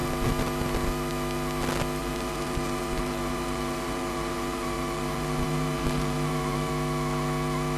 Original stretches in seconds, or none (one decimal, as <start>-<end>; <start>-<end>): 0.0-2.0; 6.7-7.8